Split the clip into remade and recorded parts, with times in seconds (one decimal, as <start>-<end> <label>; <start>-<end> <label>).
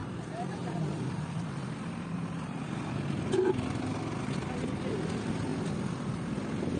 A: 0.0-2.6 remade; 2.6-6.8 recorded